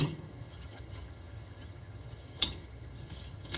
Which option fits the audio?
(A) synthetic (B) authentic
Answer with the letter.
A